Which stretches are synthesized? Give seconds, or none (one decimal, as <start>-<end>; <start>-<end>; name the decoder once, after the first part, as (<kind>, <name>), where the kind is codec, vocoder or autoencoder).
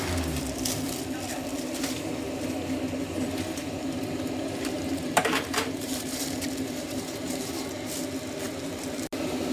3.6-7.9 (vocoder, BigVGAN v2)